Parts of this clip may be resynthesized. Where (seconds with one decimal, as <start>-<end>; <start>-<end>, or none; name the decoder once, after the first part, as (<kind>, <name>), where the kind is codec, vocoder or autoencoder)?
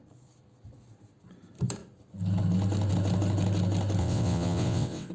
4.0-5.1 (vocoder, WaveNeXt)